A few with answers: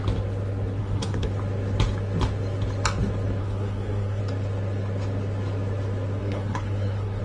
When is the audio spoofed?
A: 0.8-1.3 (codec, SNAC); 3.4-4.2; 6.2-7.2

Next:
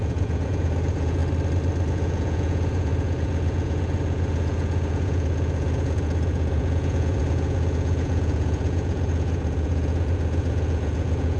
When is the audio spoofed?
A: 0.0-1.2 (vocoder, Vocos); 1.9-11.4